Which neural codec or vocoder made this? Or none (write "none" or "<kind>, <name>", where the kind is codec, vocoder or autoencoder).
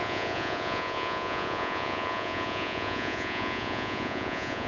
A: vocoder, Vocos